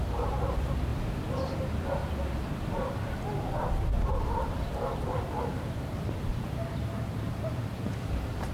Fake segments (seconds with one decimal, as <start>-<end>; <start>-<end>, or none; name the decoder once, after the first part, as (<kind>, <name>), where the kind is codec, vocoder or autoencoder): 0.0-0.9 (vocoder, BigVGAN v2); 1.6-2.0; 3.6-8.5